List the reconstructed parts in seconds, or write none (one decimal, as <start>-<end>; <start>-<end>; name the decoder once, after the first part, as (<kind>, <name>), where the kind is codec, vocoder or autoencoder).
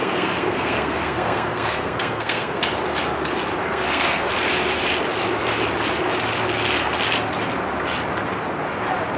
0.0-2.6 (codec, SNAC); 3.6-4.3